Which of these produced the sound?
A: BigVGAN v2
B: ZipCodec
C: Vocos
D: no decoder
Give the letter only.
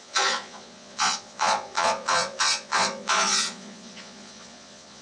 C